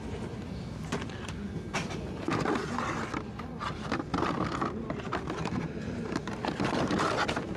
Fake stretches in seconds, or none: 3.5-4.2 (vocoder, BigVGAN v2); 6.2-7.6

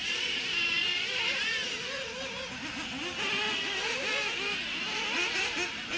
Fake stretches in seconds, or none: 0.0-1.6 (vocoder, BigVGAN v2); 3.8-4.6

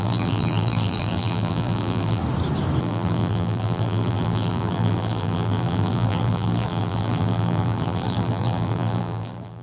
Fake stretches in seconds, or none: 0.0-2.2 (vocoder, BigVGAN v2); 2.8-9.6

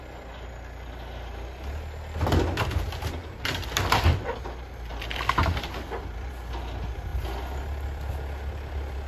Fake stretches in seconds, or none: 3.2-4.1 (vocoder, BigVGAN v2); 4.9-6.3